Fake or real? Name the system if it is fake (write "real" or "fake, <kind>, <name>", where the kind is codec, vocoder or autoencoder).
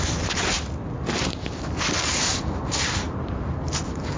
fake, vocoder, BigVGAN v2